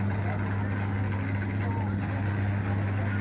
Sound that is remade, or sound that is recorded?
recorded